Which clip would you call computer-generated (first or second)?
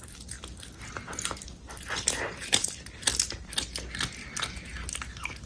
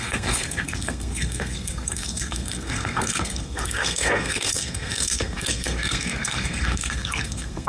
second